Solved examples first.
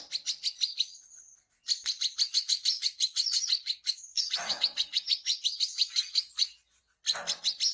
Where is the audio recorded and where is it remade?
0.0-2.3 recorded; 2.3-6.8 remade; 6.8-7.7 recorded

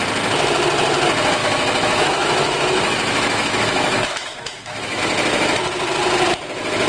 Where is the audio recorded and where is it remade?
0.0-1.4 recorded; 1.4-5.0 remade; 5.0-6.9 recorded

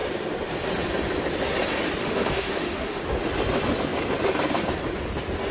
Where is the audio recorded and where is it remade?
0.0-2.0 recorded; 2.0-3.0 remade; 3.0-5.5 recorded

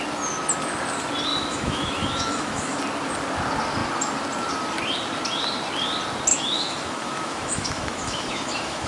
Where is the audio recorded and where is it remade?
0.0-1.3 recorded; 1.3-2.8 remade; 2.8-6.3 recorded; 6.3-8.9 remade

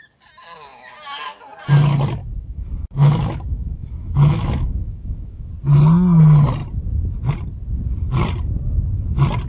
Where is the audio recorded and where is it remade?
0.0-2.2 recorded; 2.2-5.5 remade; 5.5-9.5 recorded